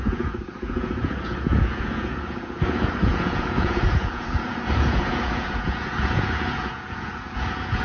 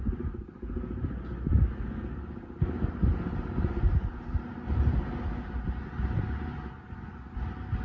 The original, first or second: second